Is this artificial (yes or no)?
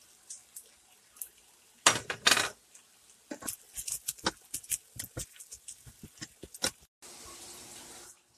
no